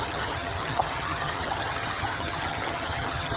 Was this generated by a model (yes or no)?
yes